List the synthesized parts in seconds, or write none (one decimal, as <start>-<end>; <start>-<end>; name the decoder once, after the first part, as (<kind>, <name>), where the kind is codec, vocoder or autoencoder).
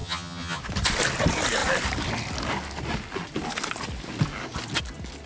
0.0-0.6 (vocoder, HiFi-GAN)